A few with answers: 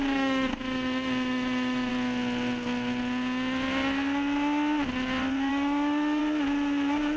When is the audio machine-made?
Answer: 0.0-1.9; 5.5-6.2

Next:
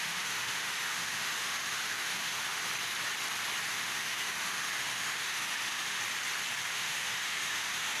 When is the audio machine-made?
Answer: 0.0-2.6; 3.7-6.0; 6.7-8.0

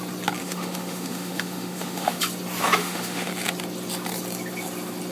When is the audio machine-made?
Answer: 0.4-2.2; 2.8-3.3

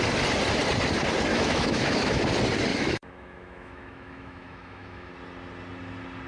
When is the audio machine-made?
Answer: 1.3-2.3; 2.7-5.1